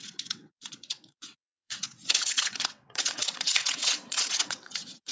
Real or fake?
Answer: fake